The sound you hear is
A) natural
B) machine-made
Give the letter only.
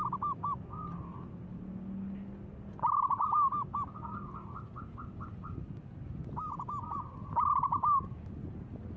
A